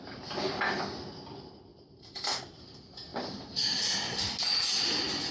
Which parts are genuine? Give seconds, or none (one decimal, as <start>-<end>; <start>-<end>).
0.0-1.7; 2.4-3.1; 4.2-5.3